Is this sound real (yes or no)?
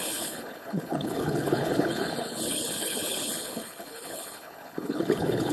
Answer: no